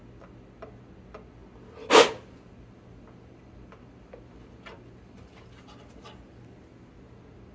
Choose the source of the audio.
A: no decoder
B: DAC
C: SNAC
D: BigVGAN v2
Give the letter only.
A